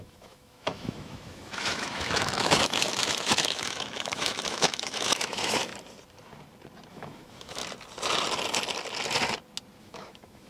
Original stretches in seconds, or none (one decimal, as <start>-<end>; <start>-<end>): 5.7-6.9; 7.6-9.8